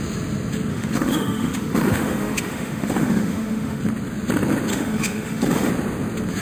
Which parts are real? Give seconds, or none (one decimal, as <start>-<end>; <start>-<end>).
0.0-0.7; 3.8-4.7; 5.7-6.4